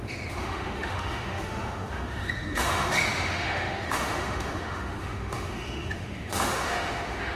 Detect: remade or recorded remade